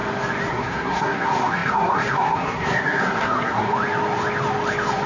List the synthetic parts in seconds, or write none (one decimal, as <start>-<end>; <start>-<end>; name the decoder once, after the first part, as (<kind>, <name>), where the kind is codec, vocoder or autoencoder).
0.5-3.7 (codec, SNAC)